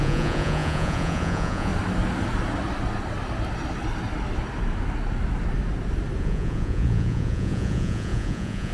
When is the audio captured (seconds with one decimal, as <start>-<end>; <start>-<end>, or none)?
1.7-6.2